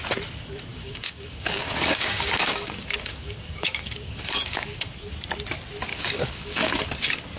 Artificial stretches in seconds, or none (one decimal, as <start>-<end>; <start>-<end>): 0.7-5.1; 5.9-6.8